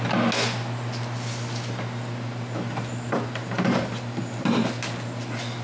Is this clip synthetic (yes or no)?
no